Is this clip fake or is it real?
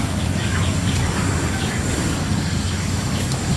fake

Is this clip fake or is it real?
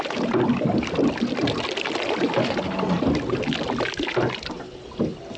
real